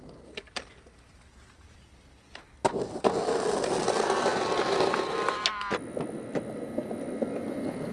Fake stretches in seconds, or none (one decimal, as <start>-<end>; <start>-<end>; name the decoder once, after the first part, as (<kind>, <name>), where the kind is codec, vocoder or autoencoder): none